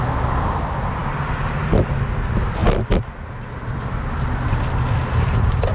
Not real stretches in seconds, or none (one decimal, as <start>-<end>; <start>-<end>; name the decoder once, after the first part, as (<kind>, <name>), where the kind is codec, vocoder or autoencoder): none